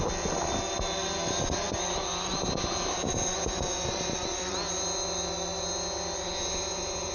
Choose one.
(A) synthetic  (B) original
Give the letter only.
B